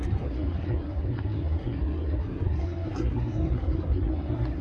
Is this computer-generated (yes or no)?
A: yes